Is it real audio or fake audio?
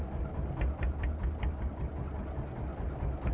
real